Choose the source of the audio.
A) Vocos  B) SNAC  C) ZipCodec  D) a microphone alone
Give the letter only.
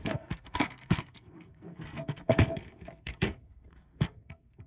B